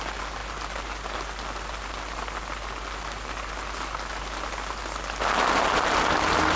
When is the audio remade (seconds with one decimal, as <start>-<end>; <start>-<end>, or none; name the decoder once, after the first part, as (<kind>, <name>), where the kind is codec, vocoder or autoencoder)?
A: none